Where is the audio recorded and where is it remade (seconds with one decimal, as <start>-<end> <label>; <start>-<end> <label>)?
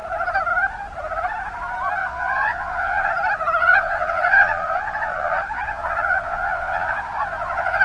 0.0-2.0 recorded; 2.0-3.1 remade; 3.1-3.6 recorded; 3.6-7.8 remade